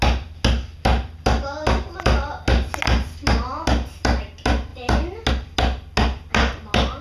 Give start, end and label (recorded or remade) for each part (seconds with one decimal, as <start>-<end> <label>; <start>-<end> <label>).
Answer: 0.0-7.0 recorded

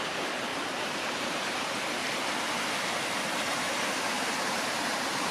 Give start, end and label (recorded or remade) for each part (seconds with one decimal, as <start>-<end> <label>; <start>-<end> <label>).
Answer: 0.0-2.0 remade; 2.0-3.7 recorded; 3.7-5.3 remade

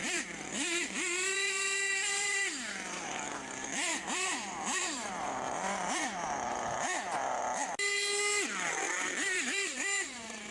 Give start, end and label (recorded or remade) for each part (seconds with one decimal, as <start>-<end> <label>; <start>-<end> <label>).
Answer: 0.0-7.4 remade; 7.4-8.7 recorded; 8.7-10.5 remade

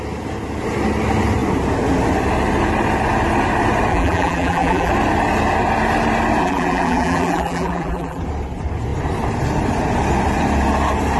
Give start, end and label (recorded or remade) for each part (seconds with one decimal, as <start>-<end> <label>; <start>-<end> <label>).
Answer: 0.0-3.9 recorded; 3.9-4.9 remade; 4.9-6.4 recorded; 6.4-8.2 remade; 8.2-11.2 recorded

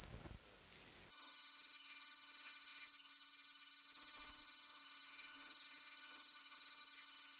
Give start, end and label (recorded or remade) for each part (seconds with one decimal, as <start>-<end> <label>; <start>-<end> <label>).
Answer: 0.0-1.1 recorded; 1.1-7.4 remade

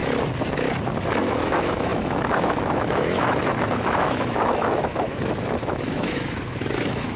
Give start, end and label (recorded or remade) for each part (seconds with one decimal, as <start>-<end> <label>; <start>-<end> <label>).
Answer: 0.0-1.2 recorded; 1.2-7.2 remade

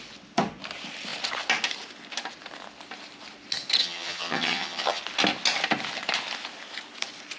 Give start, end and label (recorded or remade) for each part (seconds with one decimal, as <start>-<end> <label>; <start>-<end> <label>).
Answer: 0.0-3.8 recorded; 3.8-5.0 remade; 5.0-7.4 recorded